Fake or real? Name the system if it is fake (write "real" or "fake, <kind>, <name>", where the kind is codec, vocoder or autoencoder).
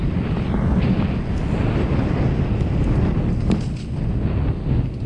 real